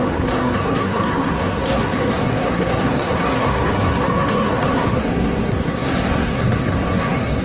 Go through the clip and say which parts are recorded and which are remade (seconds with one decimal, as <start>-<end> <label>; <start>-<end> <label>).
0.0-7.4 remade